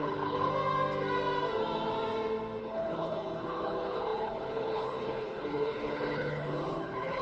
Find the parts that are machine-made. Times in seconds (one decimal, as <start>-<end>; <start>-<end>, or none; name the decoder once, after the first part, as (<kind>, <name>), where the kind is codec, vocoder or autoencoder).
0.0-0.5 (codec, HILCodec); 2.6-7.2